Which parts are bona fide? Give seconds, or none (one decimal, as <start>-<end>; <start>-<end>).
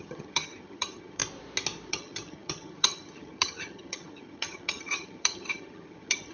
1.2-1.9